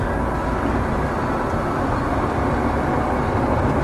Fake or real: real